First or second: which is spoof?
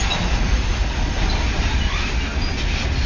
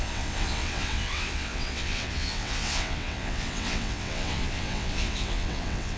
second